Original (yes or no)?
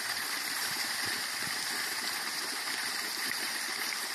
no